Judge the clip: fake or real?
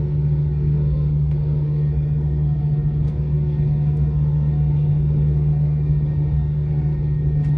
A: fake